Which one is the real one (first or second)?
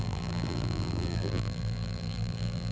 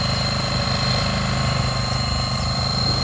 second